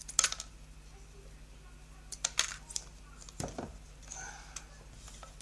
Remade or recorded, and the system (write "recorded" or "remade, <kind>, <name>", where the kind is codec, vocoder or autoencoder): recorded